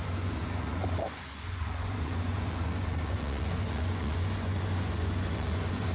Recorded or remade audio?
remade